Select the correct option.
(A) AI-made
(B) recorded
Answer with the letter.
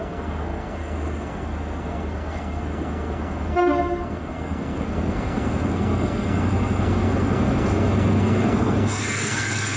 A